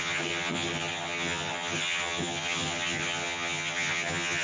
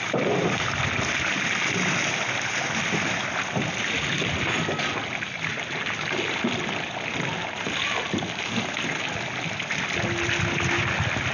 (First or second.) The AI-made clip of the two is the first